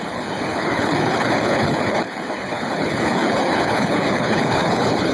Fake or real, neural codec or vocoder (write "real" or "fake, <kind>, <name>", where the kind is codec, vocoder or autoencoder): fake, codec, HILCodec